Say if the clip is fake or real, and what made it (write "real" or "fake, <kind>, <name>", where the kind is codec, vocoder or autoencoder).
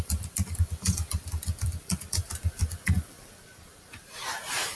fake, vocoder, BigVGAN v2